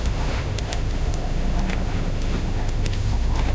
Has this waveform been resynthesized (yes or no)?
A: yes